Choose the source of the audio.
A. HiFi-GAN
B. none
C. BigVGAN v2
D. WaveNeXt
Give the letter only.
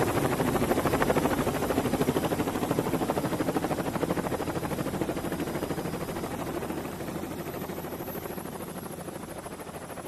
B